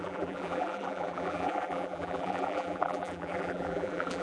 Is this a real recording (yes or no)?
no